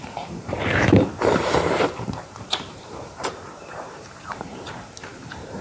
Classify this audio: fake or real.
fake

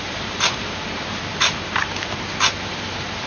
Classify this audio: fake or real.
fake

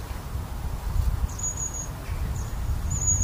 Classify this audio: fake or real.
real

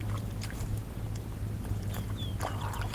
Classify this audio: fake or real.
real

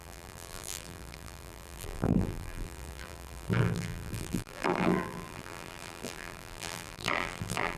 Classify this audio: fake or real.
fake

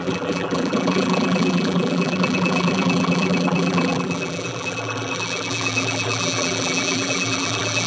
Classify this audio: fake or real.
fake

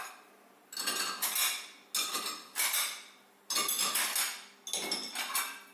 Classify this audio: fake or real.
real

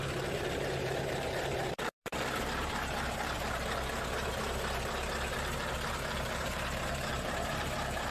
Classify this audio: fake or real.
fake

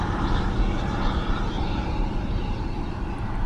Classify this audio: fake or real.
fake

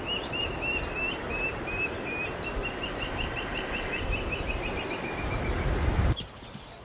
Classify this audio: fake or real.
fake